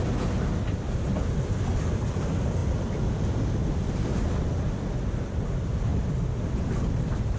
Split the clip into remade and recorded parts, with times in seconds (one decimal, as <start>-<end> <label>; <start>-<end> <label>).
0.0-7.4 recorded